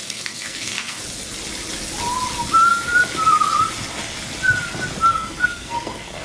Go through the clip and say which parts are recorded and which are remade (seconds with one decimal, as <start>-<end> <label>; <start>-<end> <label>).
0.0-1.0 remade; 1.0-5.1 recorded; 5.1-6.2 remade